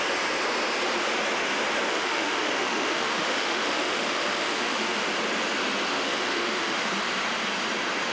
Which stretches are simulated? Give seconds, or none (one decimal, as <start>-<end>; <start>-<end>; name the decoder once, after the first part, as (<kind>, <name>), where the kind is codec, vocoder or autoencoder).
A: 1.9-5.0 (autoencoder, DAC-VAE); 5.9-6.9